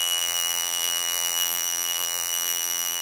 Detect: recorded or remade remade